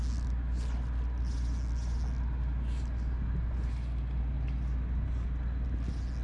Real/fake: real